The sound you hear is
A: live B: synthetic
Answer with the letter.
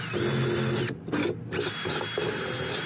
A